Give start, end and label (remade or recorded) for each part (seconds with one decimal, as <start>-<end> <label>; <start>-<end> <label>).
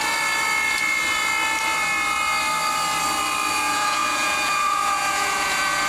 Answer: 0.0-3.5 recorded; 3.5-5.9 remade